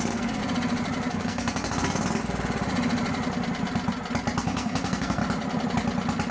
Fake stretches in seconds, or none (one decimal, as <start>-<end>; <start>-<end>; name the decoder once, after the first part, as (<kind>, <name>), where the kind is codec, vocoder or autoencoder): 0.0-0.4 (codec, SNAC); 1.1-2.0; 4.4-5.2